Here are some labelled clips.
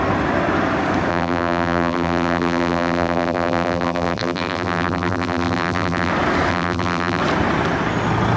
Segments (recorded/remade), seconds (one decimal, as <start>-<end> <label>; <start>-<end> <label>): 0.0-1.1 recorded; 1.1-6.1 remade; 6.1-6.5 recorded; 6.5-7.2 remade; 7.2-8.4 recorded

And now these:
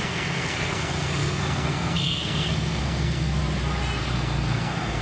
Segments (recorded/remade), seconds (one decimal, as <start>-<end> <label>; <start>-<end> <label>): 0.0-3.4 remade; 3.4-4.0 recorded; 4.0-5.0 remade

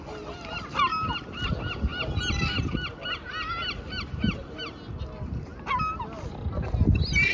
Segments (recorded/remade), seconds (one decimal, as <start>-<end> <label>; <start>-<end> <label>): 0.0-7.3 recorded

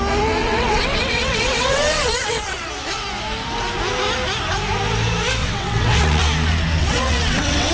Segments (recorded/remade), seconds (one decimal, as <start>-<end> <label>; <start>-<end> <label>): 0.0-0.4 recorded; 0.4-2.7 remade; 2.7-5.4 recorded; 5.4-6.2 remade; 6.2-6.8 recorded; 6.8-7.7 remade

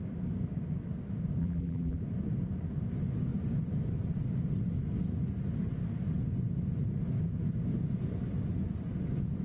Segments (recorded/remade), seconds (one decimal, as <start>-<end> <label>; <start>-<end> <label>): 0.0-1.4 recorded; 1.4-2.0 remade; 2.0-9.4 recorded

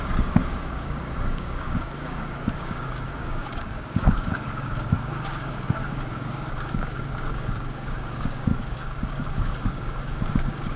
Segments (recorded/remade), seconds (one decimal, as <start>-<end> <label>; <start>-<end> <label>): 0.0-10.8 remade

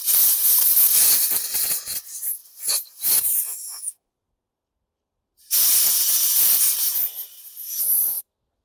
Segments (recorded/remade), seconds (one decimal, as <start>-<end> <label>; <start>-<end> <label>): 0.0-3.5 recorded; 3.5-4.1 remade; 4.1-8.6 recorded

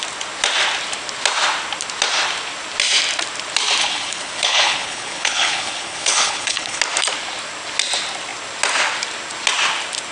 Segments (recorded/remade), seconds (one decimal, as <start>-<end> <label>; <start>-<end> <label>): 0.0-3.8 recorded; 3.8-6.8 remade; 6.8-10.1 recorded